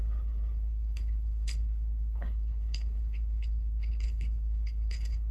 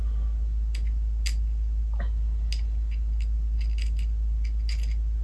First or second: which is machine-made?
first